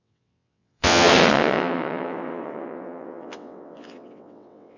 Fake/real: fake